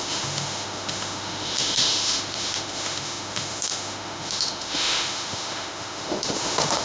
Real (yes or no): no